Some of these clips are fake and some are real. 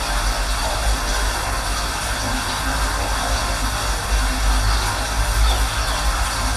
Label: real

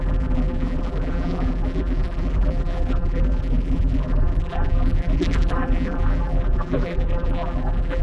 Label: fake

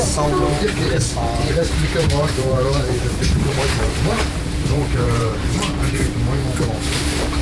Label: fake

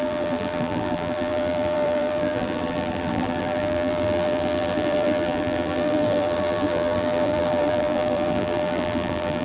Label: fake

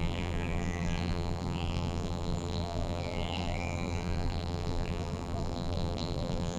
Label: fake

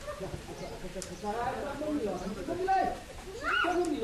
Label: fake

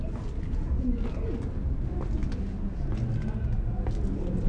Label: real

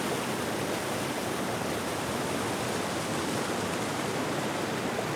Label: real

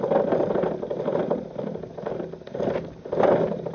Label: real